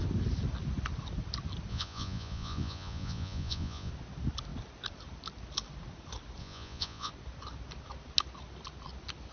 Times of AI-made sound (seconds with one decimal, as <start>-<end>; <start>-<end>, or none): 1.7-3.9; 6.4-7.1